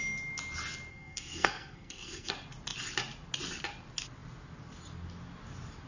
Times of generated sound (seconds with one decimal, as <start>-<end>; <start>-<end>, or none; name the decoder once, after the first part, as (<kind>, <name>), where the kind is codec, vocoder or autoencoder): 0.9-2.3 (codec, SNAC)